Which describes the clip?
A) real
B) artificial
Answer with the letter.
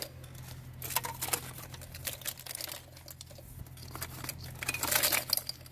A